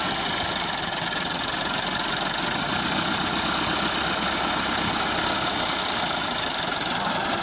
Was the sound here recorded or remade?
recorded